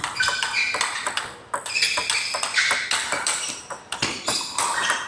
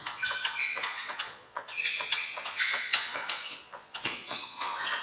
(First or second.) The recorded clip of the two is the first